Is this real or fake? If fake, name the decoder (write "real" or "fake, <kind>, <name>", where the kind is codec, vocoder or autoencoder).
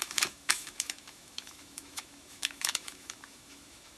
fake, autoencoder, DAC-VAE